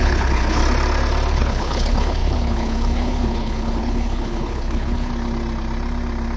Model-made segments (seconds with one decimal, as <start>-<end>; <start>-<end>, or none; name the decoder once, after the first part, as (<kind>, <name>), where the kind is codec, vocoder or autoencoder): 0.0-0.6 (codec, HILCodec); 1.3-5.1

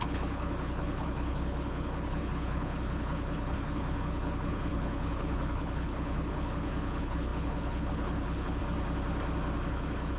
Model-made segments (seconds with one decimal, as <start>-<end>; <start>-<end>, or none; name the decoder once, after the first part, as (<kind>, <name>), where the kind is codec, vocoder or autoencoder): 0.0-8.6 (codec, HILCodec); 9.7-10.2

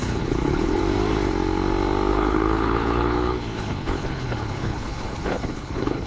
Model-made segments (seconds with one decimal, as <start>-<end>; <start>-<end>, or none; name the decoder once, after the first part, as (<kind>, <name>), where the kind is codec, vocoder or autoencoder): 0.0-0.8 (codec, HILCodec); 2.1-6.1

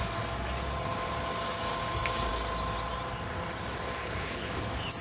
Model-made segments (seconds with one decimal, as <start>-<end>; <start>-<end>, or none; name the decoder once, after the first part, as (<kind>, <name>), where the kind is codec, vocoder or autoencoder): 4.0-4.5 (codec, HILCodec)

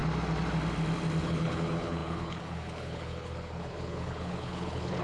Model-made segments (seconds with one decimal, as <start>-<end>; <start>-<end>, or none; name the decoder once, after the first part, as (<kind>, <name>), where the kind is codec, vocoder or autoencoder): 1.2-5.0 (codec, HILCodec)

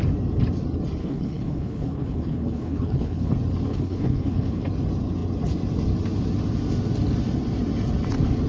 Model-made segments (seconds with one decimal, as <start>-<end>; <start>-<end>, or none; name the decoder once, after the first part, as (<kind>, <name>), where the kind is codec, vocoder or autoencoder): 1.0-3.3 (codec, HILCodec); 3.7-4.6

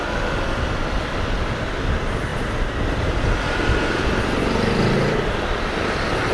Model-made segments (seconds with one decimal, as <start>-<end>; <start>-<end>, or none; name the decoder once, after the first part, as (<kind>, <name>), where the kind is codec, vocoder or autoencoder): none

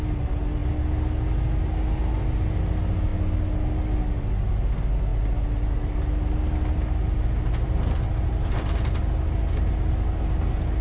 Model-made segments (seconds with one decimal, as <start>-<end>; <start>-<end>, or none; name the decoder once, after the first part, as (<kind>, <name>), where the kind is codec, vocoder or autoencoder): none